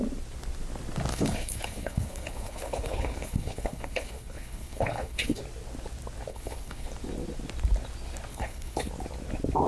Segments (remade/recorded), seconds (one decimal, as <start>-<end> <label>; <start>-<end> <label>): 0.0-1.1 recorded; 1.1-5.4 remade; 5.4-6.3 recorded; 6.3-6.9 remade; 6.9-8.3 recorded; 8.3-8.9 remade; 8.9-9.7 recorded